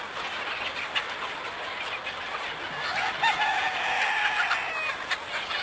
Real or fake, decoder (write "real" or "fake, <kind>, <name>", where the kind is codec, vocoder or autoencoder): real